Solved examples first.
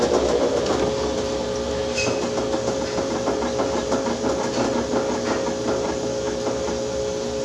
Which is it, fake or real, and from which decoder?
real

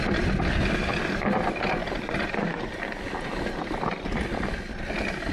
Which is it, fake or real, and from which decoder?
real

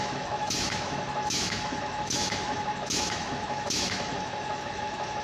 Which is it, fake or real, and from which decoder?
fake, autoencoder, DAC-VAE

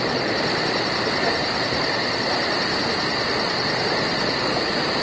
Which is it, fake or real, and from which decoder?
real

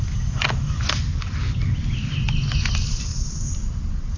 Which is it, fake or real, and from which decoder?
real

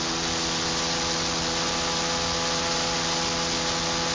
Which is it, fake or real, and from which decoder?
real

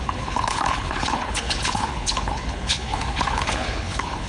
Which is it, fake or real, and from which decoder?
fake, codec, HILCodec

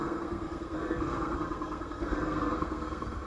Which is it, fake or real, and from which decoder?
fake, codec, SNAC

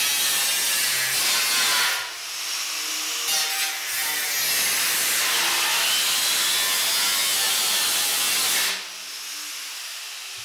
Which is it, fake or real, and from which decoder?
real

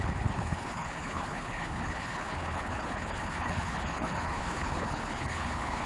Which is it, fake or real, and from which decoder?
fake, codec, HILCodec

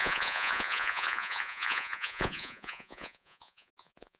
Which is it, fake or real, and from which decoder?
fake, vocoder, Vocos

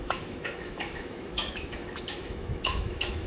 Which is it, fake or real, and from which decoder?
fake, autoencoder, DAC-VAE